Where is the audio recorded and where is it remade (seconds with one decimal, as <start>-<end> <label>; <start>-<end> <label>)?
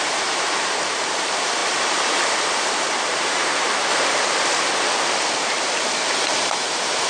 0.0-3.9 remade; 3.9-6.5 recorded; 6.5-7.1 remade